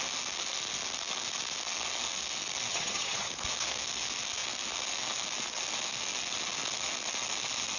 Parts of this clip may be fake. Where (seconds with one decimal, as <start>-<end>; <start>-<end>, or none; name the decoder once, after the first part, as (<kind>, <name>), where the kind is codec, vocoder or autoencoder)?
2.7-3.3 (vocoder, HiFi-GAN)

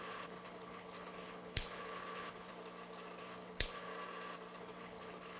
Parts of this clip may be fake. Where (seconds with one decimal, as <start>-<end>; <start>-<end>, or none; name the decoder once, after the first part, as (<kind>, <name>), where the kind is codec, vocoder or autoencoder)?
0.0-2.5 (codec, HILCodec); 3.2-3.9; 4.6-5.4

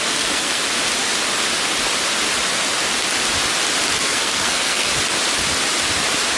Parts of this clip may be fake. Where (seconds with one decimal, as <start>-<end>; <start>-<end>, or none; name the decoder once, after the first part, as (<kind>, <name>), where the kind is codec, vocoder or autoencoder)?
0.0-0.6 (codec, SNAC); 4.0-4.9

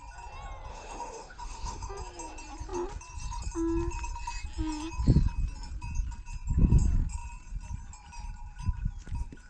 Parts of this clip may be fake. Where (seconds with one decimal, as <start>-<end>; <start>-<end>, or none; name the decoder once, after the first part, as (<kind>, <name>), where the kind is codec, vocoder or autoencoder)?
0.7-1.9 (autoencoder, DAC-VAE)